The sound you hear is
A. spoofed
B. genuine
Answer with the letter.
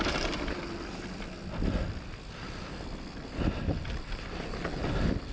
B